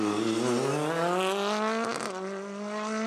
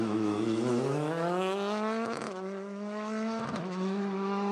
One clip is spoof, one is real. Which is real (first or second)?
first